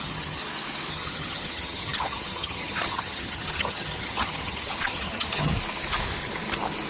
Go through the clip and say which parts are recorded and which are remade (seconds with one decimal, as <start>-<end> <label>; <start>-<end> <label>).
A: 0.0-0.4 remade; 0.4-0.9 recorded; 0.9-5.5 remade; 5.5-6.9 recorded